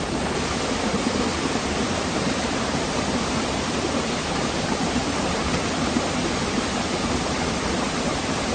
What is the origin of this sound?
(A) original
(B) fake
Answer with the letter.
A